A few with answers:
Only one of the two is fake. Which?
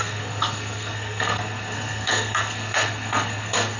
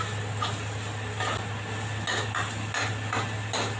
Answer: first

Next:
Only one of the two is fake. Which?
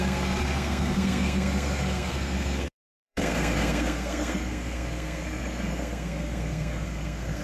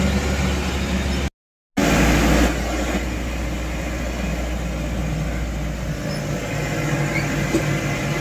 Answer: first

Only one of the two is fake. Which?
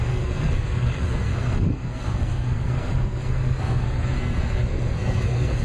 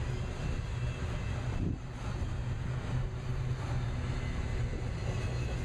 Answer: first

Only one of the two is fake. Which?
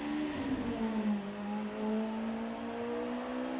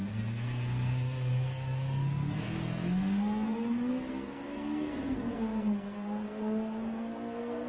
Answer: second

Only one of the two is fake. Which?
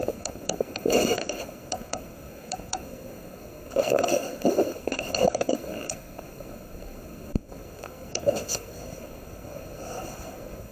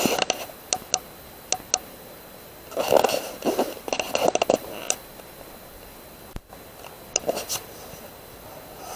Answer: first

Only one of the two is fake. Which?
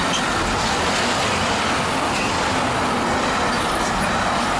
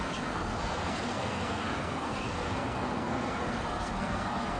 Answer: second